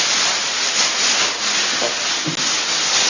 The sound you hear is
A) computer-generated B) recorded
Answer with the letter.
B